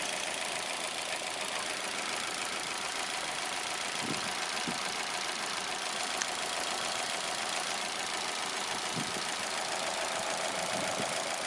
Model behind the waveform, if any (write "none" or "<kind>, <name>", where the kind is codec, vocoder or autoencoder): none